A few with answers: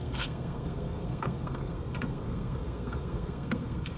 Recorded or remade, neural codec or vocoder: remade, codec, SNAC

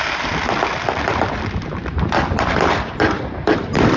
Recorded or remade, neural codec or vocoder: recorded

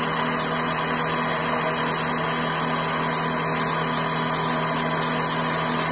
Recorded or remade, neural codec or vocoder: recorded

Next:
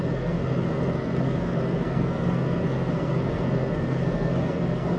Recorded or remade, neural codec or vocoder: remade, codec, SNAC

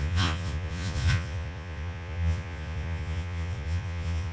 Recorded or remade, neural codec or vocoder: remade, vocoder, Vocos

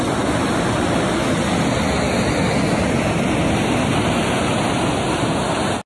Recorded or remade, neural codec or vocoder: recorded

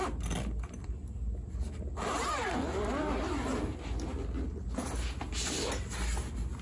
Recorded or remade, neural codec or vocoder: recorded